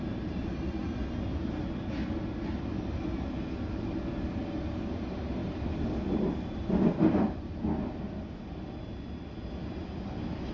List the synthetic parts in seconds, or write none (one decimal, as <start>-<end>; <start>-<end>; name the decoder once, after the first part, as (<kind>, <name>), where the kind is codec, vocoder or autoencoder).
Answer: 5.4-7.3 (vocoder, BigVGAN v2); 9.6-10.5